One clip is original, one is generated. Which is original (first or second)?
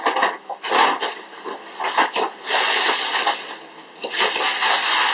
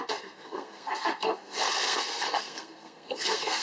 first